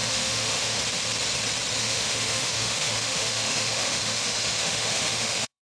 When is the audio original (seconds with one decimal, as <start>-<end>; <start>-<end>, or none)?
0.8-1.8